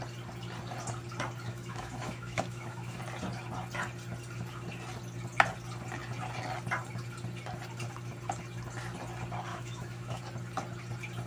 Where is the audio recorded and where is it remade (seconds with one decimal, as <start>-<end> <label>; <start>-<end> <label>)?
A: 0.0-1.5 recorded; 1.5-3.0 remade; 3.0-9.5 recorded; 9.5-10.2 remade; 10.2-11.3 recorded